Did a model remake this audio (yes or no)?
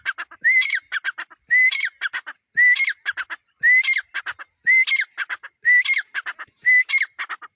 no